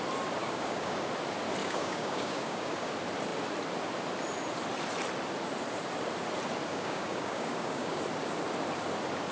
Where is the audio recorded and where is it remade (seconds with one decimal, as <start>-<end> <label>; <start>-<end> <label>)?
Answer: 0.0-0.4 recorded; 0.4-1.1 remade; 1.1-1.6 recorded; 1.6-2.9 remade; 2.9-6.7 recorded; 6.7-8.0 remade; 8.0-9.3 recorded